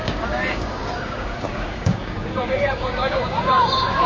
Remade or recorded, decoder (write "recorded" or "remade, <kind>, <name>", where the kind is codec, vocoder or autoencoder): remade, codec, DAC